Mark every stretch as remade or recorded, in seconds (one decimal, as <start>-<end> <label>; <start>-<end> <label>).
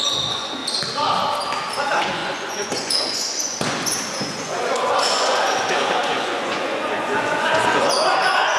0.0-0.6 remade; 0.6-1.8 recorded; 1.8-8.6 remade